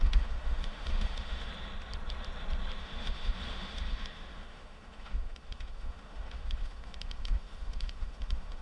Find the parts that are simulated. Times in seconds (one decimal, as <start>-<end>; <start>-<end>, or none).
0.0-1.5; 2.8-8.6